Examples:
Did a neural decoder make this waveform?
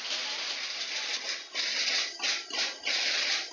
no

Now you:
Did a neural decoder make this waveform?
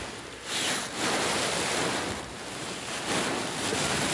yes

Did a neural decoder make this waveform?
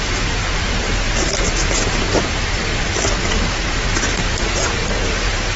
yes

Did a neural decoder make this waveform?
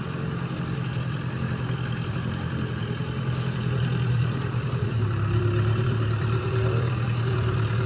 yes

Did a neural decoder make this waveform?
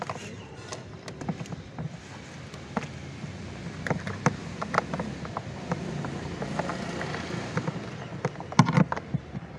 yes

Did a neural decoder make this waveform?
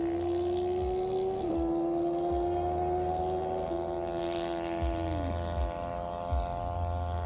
no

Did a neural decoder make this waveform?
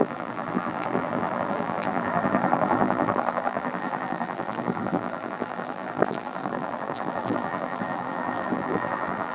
yes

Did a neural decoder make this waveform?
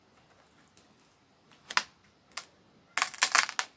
no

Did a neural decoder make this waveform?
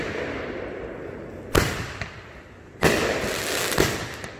no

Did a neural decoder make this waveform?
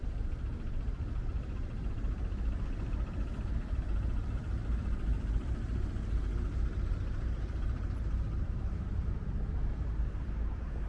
yes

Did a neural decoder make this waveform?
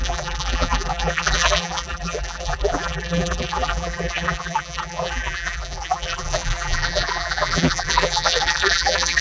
yes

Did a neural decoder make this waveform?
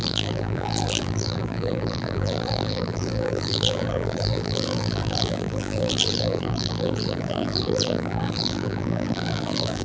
yes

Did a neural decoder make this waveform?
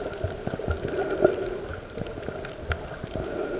no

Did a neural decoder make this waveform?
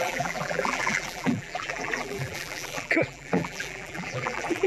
yes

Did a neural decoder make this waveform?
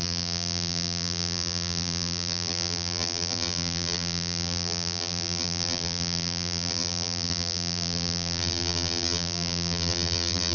yes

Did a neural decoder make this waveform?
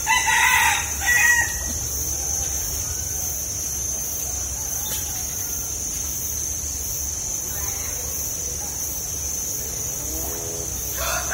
no